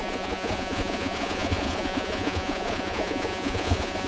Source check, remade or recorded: remade